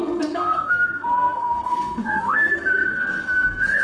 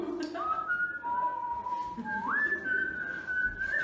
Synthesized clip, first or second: first